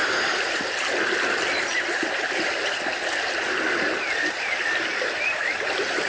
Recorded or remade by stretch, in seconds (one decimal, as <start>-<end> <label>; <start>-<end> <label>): 0.0-1.0 remade; 1.0-1.7 recorded; 1.7-5.4 remade; 5.4-6.1 recorded